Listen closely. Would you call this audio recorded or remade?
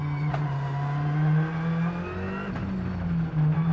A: recorded